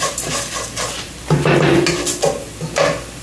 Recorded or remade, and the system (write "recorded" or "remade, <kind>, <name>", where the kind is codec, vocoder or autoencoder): recorded